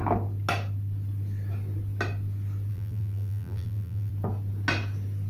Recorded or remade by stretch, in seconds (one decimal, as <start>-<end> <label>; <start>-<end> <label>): 0.0-2.7 recorded; 2.7-4.1 remade; 4.1-5.3 recorded